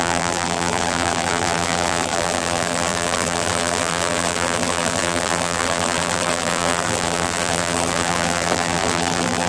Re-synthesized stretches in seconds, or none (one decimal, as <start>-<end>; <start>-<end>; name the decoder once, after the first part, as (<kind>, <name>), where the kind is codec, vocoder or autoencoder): 0.0-9.5 (vocoder, BigVGAN v2)